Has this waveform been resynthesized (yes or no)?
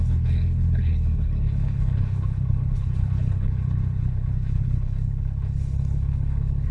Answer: yes